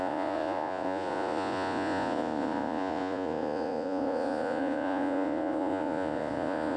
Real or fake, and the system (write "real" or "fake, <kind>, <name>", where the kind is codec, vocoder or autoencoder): fake, vocoder, Vocos